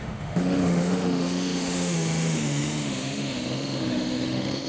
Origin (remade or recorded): remade